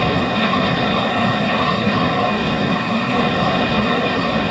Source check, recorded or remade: remade